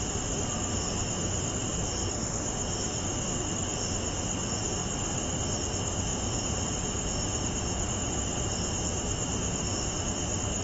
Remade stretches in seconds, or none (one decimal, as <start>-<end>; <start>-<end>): 6.1-8.2

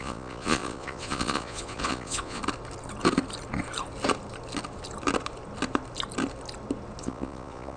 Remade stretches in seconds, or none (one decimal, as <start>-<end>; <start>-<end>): 0.0-2.4; 7.0-7.8

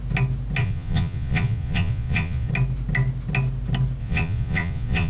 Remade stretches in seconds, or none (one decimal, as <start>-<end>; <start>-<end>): 0.6-2.5; 4.0-5.1

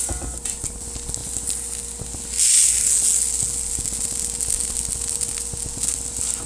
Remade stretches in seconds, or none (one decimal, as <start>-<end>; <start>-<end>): none

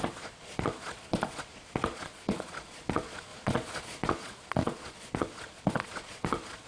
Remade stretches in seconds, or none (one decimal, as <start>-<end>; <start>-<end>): 0.0-6.7

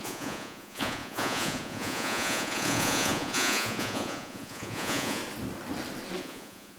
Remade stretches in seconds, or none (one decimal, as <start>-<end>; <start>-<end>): 0.0-5.2; 6.2-6.8